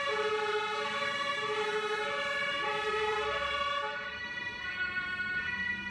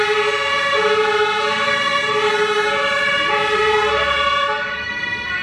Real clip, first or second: second